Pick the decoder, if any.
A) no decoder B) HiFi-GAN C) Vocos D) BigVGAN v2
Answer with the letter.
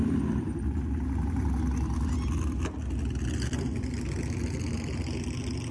A